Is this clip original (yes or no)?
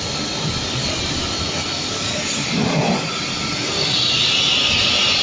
yes